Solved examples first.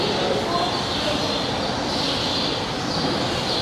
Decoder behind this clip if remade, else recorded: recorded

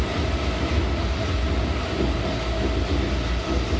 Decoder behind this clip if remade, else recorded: recorded